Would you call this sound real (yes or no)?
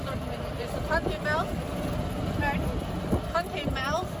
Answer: yes